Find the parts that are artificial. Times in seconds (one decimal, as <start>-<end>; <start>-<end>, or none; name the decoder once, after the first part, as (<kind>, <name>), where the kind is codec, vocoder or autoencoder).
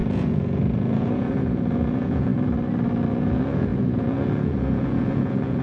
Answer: 0.0-2.3 (vocoder, Vocos); 3.1-5.6